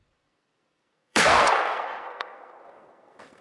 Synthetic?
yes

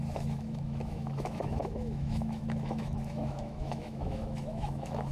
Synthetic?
yes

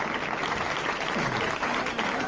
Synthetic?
no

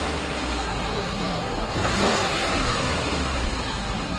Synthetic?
yes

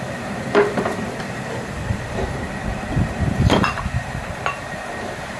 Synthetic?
yes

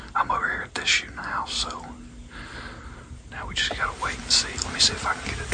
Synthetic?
no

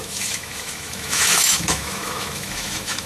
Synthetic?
yes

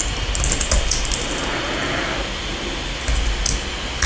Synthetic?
no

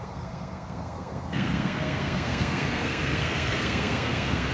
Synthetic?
yes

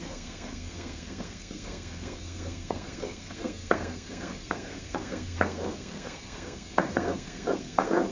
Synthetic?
yes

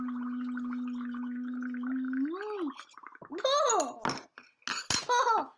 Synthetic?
no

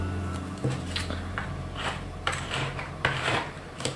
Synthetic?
yes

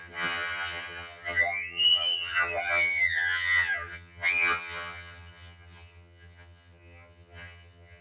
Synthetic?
yes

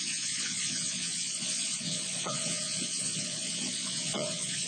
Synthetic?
yes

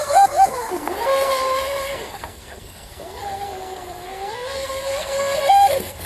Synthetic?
yes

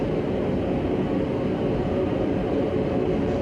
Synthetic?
no